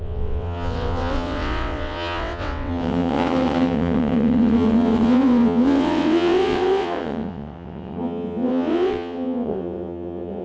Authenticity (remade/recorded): remade